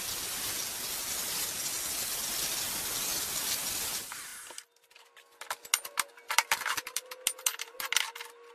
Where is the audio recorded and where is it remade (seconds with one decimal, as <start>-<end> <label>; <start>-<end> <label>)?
0.0-8.5 recorded